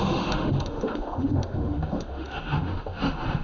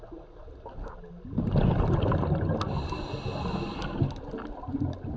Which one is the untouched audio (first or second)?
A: second